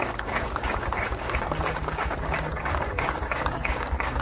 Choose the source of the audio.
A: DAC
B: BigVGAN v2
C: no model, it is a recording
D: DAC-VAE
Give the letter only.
A